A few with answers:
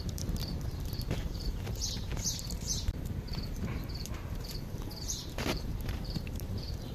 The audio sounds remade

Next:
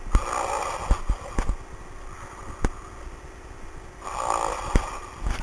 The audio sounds recorded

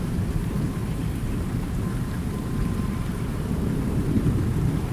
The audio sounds remade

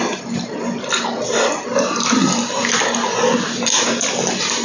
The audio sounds recorded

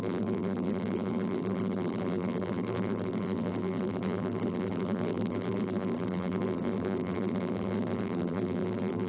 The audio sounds remade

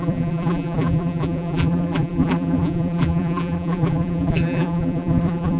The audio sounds remade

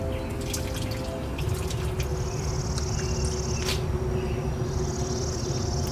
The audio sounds recorded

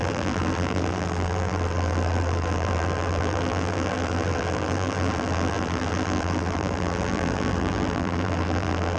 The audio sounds remade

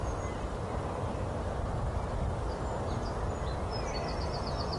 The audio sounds recorded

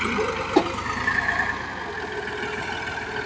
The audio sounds recorded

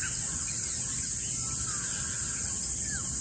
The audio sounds recorded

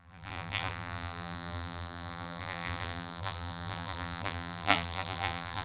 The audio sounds remade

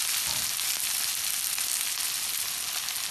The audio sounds recorded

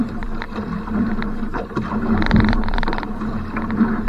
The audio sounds remade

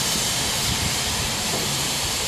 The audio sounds remade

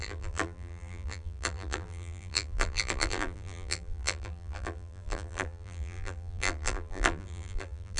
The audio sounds remade